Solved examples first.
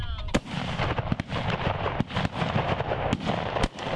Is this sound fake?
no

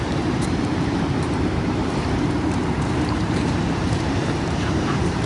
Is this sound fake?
yes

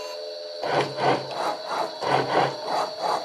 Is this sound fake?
no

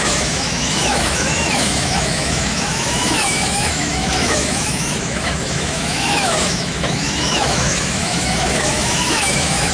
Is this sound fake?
yes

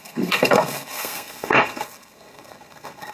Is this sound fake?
yes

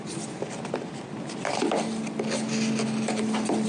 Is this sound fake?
no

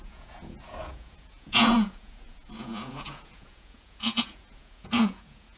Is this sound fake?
yes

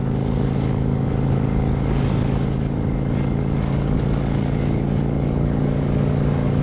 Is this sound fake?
yes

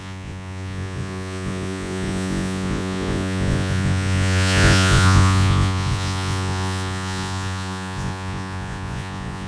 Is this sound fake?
yes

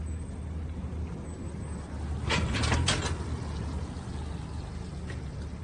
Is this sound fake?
no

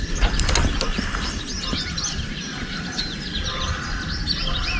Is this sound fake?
no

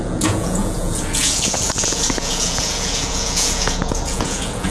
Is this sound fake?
yes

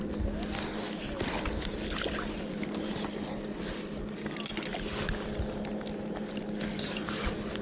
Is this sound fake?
no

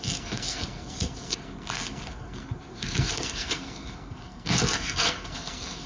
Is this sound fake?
yes